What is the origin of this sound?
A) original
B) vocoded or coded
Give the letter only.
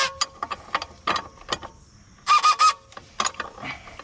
A